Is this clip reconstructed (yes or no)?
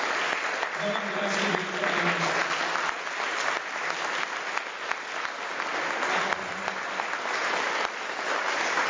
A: no